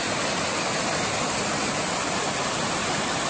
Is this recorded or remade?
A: recorded